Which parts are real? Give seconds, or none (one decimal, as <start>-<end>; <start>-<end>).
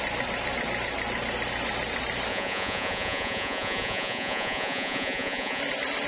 0.0-2.3; 5.6-6.1